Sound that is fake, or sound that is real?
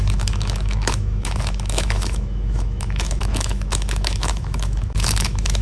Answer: fake